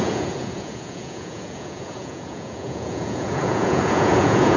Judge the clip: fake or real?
fake